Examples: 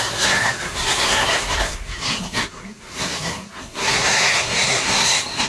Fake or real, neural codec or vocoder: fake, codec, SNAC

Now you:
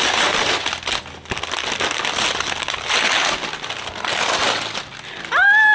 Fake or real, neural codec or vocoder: real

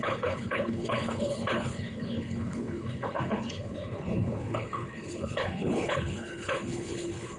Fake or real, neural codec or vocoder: fake, codec, HILCodec